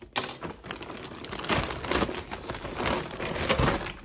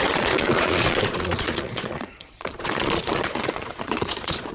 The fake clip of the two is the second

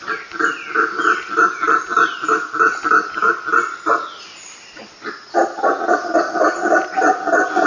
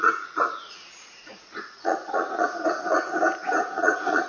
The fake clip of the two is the second